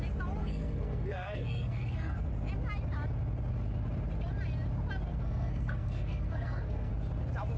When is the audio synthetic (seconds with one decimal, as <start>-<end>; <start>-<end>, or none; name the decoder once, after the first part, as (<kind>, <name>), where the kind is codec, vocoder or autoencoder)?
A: 0.4-2.3 (codec, SNAC); 5.1-6.9